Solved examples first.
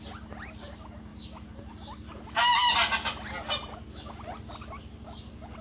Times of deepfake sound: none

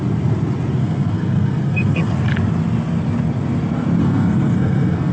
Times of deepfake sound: 0.8-2.1 (codec, SNAC); 4.0-5.1

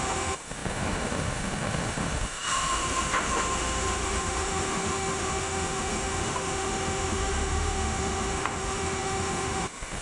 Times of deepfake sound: 0.0-10.0 (autoencoder, DAC-VAE)

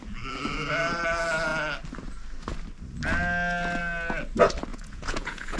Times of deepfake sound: 4.7-5.6 (vocoder, Vocos)

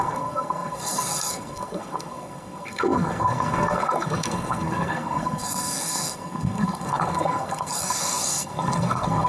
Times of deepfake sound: 0.0-9.3 (codec, SNAC)

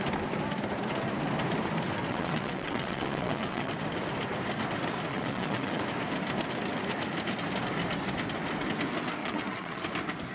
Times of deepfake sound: 2.1-3.7 (vocoder, WaveNeXt); 5.1-5.8; 9.2-9.8